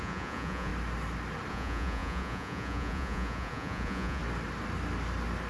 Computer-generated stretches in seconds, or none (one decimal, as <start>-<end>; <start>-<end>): 0.0-0.7; 1.5-4.2